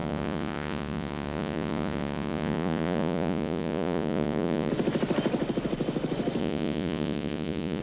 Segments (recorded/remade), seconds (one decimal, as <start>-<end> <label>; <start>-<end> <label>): 0.0-4.7 remade; 4.7-6.4 recorded; 6.4-7.8 remade